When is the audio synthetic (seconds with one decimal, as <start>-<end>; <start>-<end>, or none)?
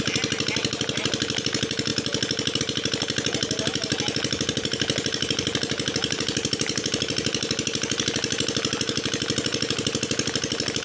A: none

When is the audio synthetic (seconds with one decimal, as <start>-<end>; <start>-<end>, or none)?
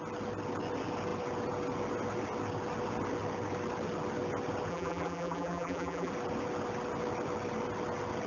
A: 4.7-6.1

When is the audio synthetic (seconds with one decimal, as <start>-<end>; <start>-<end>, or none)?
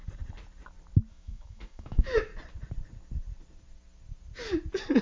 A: 1.1-2.3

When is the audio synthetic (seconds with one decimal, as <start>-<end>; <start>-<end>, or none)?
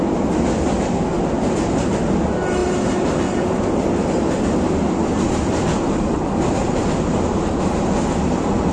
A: none